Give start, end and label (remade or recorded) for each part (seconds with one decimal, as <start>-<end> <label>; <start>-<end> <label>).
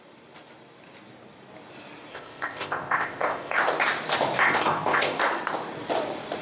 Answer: 0.0-2.1 recorded; 2.1-3.6 remade; 3.6-4.4 recorded; 4.4-5.2 remade; 5.2-6.4 recorded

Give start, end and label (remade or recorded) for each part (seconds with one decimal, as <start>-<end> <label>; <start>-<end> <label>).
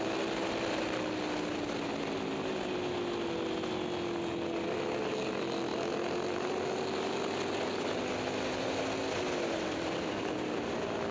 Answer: 0.0-11.1 recorded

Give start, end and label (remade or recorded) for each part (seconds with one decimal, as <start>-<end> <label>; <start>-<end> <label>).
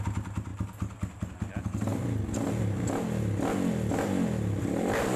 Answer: 0.0-5.2 recorded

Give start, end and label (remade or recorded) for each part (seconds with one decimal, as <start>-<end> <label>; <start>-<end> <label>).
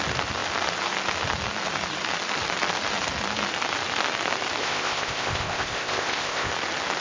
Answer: 0.0-4.6 recorded; 4.6-6.5 remade; 6.5-7.0 recorded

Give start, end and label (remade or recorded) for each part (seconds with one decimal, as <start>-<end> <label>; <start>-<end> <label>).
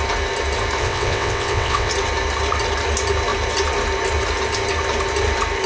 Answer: 0.0-0.8 recorded; 0.8-1.9 remade; 1.9-5.7 recorded